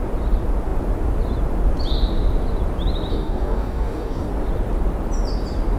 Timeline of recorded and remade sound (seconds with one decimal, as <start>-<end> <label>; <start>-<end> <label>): 0.0-3.1 recorded; 3.1-4.3 remade; 4.3-5.8 recorded